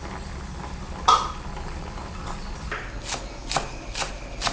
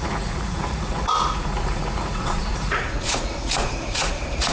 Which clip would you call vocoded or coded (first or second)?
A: second